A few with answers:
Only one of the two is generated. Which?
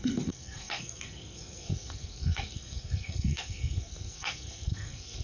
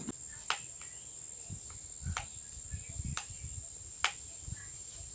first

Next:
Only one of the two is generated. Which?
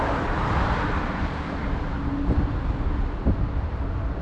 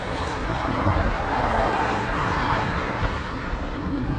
second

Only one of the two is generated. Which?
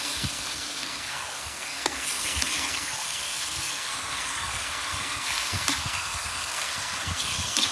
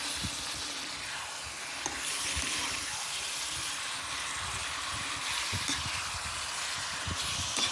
first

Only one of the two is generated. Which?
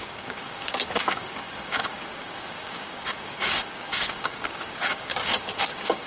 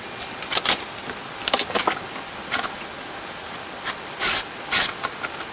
first